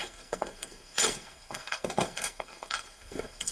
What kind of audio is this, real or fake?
fake